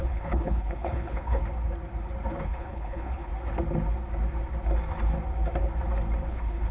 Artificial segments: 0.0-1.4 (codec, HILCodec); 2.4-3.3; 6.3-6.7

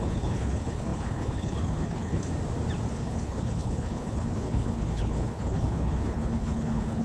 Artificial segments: 0.0-2.3 (codec, HILCodec); 2.9-7.0